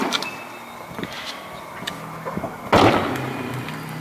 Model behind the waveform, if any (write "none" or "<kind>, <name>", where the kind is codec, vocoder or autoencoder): none